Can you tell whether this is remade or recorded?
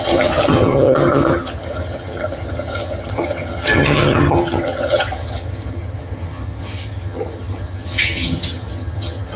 remade